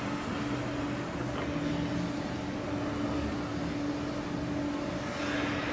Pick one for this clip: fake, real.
real